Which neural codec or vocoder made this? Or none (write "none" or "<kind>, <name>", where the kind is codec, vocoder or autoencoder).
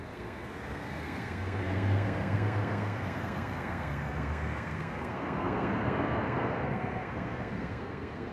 codec, SNAC